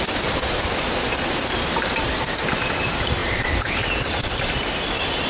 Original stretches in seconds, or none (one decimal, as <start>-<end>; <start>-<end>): 0.0-5.3